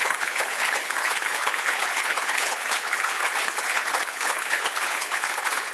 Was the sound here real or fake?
fake